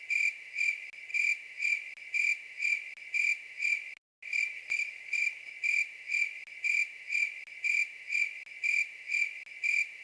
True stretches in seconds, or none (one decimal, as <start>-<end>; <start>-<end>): 0.0-10.0